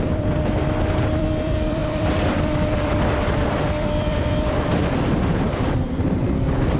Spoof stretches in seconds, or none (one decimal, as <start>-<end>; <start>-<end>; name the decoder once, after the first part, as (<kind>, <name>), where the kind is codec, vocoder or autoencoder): 0.0-4.8 (vocoder, BigVGAN v2); 5.4-6.8